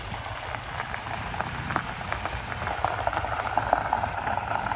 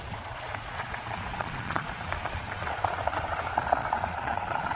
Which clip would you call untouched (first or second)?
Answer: first